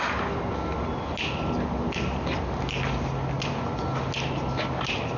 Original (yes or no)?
yes